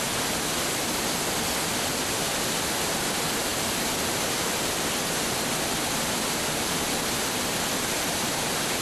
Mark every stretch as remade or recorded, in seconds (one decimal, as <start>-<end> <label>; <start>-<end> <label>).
0.0-8.8 recorded